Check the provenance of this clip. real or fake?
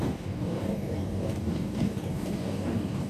fake